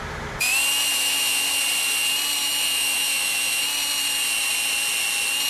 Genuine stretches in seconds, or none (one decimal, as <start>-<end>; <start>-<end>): 0.0-0.9; 1.6-2.4; 3.6-5.5